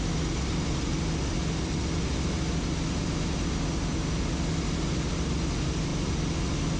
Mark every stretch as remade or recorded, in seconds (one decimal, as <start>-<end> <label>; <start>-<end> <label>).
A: 0.0-6.8 recorded